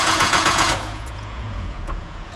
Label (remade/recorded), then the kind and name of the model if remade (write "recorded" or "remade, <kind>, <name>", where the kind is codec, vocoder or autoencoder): remade, vocoder, Vocos